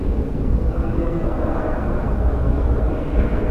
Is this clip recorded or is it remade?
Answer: remade